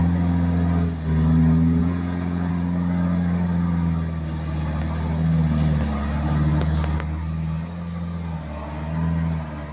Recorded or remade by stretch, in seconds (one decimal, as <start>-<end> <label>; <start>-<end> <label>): 0.0-1.8 recorded; 1.8-2.5 remade; 2.5-9.7 recorded